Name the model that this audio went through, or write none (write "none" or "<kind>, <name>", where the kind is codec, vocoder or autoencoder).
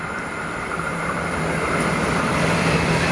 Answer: vocoder, BigVGAN v2